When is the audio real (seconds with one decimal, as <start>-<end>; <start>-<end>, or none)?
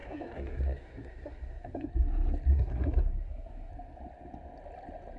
1.9-2.5; 3.7-5.2